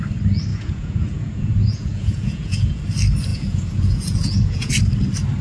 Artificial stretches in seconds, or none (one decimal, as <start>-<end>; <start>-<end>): 0.5-2.8; 3.3-4.7